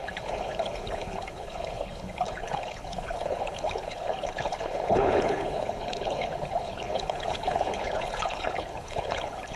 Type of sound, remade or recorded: remade